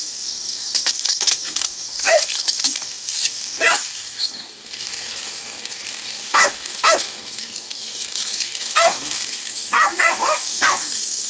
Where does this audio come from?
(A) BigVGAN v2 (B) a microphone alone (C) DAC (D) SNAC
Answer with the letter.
C